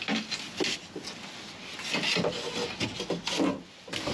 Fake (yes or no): no